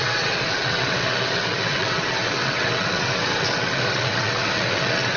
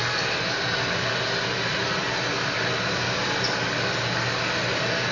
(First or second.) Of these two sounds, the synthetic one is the first